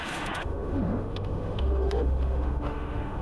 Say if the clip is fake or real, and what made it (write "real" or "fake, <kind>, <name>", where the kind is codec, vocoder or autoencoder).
fake, autoencoder, DAC-VAE